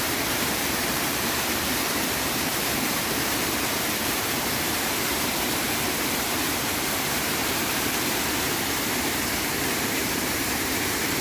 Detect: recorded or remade remade